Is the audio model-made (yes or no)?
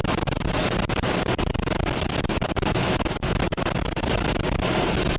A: no